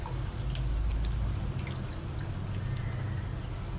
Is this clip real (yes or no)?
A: yes